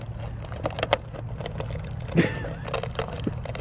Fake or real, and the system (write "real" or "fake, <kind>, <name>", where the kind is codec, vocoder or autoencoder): real